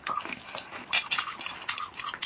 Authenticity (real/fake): real